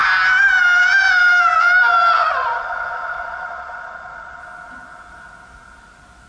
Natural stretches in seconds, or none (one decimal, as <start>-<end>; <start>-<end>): 0.0-2.2; 4.4-6.3